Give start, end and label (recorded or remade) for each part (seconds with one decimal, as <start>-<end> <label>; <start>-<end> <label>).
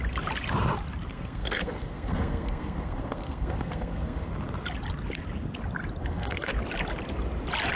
0.0-1.1 recorded; 1.1-4.3 remade; 4.3-6.0 recorded; 6.0-6.5 remade; 6.5-7.8 recorded